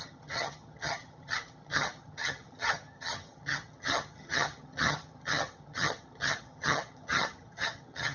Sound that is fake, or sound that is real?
fake